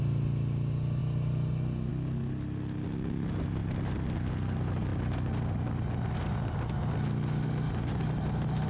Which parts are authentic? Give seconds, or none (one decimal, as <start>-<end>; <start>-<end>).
0.0-8.7